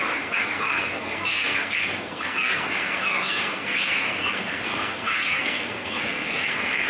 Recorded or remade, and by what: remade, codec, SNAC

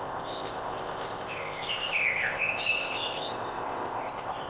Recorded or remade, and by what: remade, codec, ZipCodec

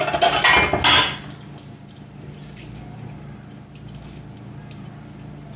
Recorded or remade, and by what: recorded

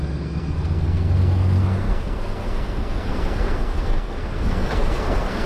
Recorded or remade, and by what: remade, codec, SNAC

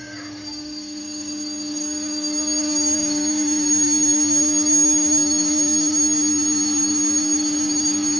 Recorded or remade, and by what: remade, codec, DAC